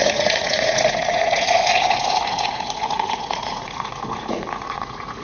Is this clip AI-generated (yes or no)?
yes